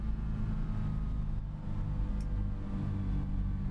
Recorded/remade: recorded